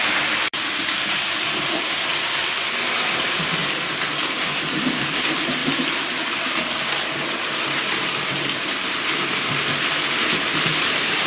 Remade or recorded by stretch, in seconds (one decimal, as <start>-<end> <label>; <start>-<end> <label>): 0.0-2.1 remade; 2.1-3.0 recorded; 3.0-3.6 remade; 3.6-4.1 recorded; 4.1-5.6 remade; 5.6-10.2 recorded; 10.2-11.3 remade